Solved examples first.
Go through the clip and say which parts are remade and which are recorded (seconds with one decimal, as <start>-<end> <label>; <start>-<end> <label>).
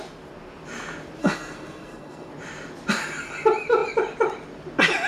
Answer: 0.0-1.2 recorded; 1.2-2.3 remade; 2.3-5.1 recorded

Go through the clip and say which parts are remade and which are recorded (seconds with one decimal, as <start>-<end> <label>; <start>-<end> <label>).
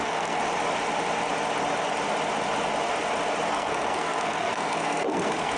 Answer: 0.0-0.4 remade; 0.4-3.5 recorded; 3.5-5.6 remade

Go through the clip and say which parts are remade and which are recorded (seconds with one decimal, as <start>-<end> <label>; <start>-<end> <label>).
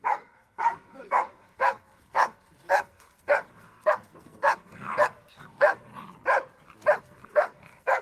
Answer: 0.0-5.9 remade; 5.9-7.0 recorded; 7.0-8.0 remade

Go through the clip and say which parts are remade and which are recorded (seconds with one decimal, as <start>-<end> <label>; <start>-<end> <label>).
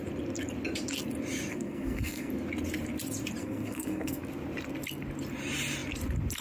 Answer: 0.0-1.5 recorded; 1.5-2.3 remade; 2.3-3.4 recorded; 3.4-4.2 remade; 4.2-6.4 recorded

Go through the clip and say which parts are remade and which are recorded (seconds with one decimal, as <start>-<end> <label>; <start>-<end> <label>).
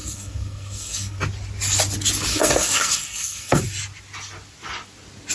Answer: 0.0-1.2 remade; 1.2-2.3 recorded; 2.3-3.6 remade; 3.6-5.3 recorded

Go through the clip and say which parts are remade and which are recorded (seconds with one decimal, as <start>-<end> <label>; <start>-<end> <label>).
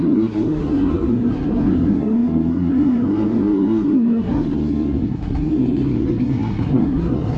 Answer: 0.0-7.4 remade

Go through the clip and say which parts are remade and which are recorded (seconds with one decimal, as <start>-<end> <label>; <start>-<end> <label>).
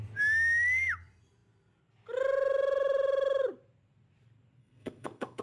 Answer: 0.0-4.6 recorded; 4.6-5.4 remade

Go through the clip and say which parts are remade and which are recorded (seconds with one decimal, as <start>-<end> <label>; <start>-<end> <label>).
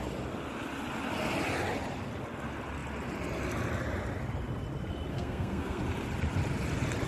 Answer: 0.0-5.1 recorded; 5.1-5.8 remade; 5.8-7.1 recorded